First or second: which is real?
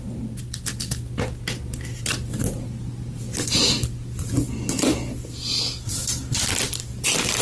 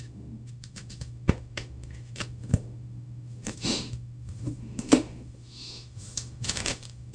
first